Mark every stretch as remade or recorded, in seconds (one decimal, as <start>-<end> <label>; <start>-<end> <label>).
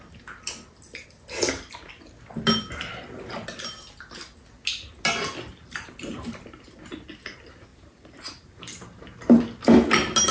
0.0-5.5 recorded; 5.5-6.7 remade; 6.7-7.7 recorded; 7.7-9.4 remade; 9.4-10.3 recorded